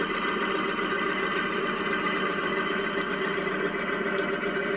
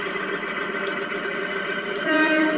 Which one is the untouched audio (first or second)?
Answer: first